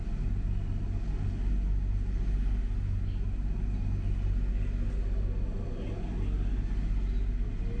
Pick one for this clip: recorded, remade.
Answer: recorded